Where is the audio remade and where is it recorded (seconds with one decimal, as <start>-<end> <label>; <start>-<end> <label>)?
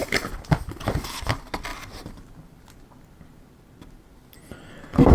0.0-5.1 recorded